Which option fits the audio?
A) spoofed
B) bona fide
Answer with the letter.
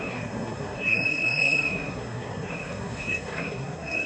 A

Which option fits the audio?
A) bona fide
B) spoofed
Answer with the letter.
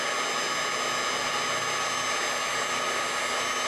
A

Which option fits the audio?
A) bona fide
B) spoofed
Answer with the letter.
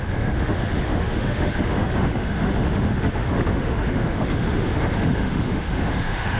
B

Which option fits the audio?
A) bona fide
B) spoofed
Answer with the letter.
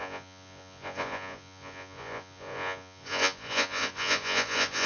B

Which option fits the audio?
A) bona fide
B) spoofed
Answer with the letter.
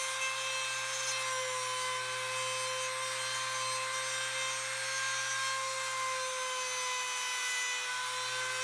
A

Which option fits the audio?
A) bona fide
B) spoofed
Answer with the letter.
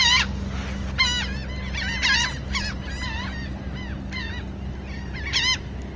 A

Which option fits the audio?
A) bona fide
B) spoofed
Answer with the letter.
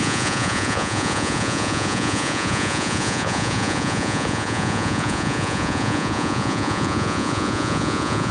B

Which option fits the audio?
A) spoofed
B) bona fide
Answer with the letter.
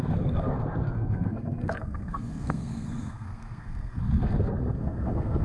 A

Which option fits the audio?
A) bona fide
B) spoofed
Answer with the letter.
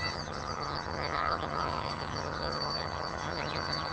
B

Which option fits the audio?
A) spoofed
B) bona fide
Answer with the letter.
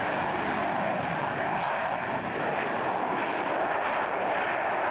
B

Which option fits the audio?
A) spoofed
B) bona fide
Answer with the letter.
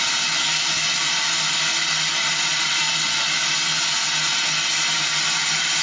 B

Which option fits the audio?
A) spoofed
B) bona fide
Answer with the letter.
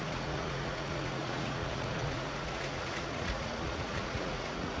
A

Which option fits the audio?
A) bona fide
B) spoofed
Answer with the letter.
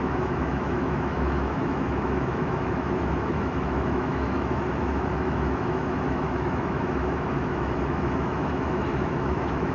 B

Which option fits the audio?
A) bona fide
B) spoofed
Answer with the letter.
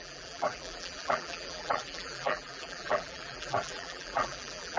B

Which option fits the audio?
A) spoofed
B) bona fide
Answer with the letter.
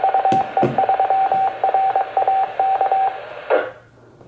B